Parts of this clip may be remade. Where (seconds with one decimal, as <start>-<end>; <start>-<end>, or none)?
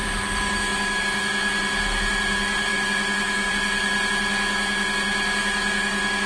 0.0-1.0; 2.7-3.5; 5.4-6.3